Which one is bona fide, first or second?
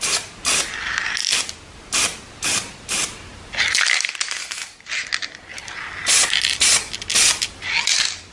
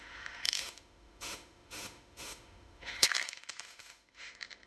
first